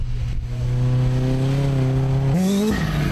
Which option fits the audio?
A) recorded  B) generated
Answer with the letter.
A